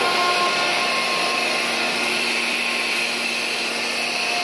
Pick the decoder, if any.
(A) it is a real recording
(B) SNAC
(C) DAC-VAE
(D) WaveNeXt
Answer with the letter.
A